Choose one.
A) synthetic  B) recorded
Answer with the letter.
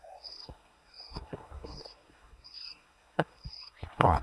A